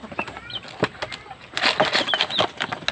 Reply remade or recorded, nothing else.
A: recorded